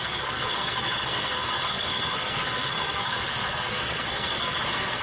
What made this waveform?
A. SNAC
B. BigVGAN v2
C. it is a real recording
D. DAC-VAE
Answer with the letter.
A